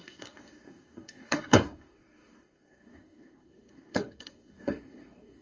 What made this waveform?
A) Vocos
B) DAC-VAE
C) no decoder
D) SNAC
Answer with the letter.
D